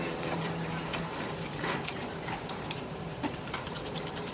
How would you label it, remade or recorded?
remade